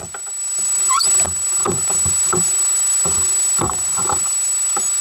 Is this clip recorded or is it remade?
recorded